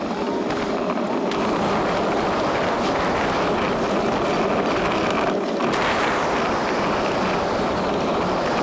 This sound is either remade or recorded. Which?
recorded